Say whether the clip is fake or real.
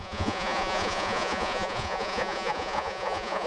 fake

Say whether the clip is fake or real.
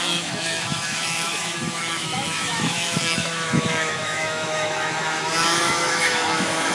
fake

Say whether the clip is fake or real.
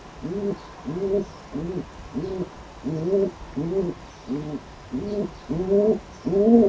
real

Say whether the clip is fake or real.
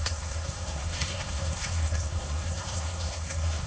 fake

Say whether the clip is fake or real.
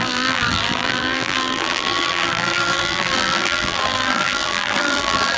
fake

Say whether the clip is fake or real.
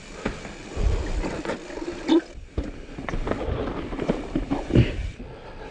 fake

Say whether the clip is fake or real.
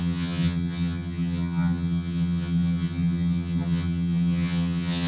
fake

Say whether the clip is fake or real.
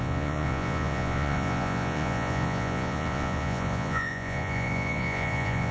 fake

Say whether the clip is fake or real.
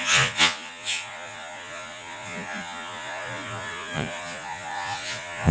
fake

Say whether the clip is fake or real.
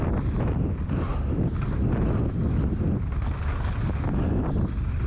real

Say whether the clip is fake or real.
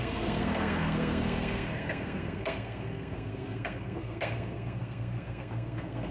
fake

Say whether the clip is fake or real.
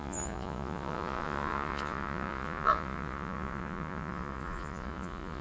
fake